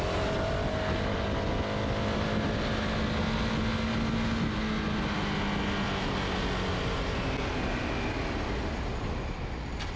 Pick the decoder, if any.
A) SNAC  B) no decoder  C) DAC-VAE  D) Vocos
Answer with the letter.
B